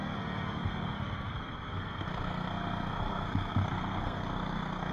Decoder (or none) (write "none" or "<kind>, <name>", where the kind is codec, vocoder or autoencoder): codec, SNAC